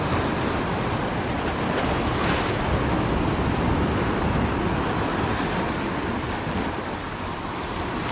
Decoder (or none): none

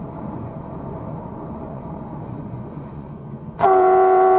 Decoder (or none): vocoder, Vocos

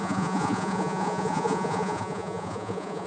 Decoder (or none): vocoder, Vocos